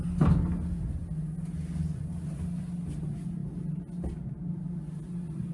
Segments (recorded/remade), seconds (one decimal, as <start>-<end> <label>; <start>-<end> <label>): 0.0-5.5 recorded